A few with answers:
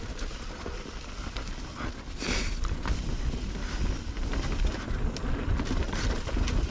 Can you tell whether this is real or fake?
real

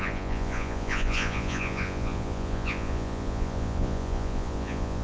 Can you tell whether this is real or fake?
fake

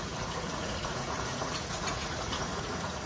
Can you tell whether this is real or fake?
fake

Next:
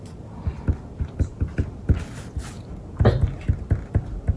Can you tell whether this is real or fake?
real